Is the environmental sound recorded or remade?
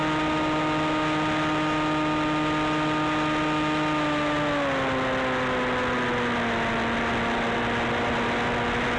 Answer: recorded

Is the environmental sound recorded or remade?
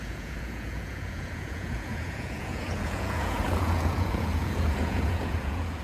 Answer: remade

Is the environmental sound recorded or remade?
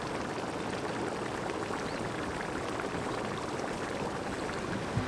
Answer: recorded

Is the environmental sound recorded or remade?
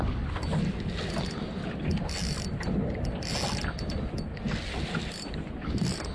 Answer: recorded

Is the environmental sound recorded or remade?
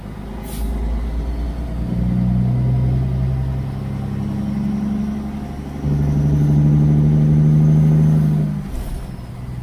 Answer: recorded